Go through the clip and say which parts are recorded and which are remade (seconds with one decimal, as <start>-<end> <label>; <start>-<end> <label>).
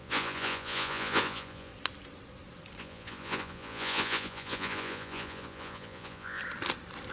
0.0-1.7 remade; 1.7-2.8 recorded; 2.8-6.4 remade; 6.4-7.1 recorded